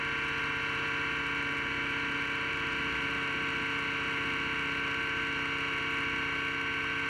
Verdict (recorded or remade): recorded